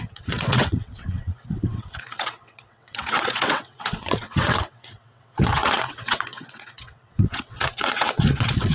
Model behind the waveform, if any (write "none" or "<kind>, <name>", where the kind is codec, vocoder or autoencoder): vocoder, WaveNeXt